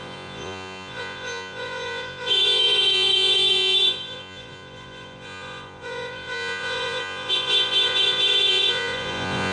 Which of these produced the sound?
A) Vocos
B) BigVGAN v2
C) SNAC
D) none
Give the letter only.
A